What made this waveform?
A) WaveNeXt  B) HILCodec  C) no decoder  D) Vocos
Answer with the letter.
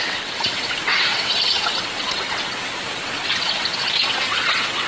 A